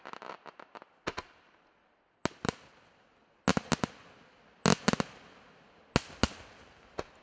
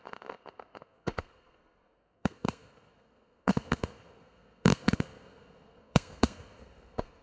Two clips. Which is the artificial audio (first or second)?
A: second